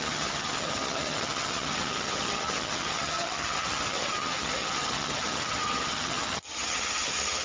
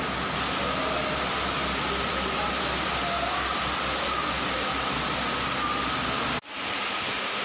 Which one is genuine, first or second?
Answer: second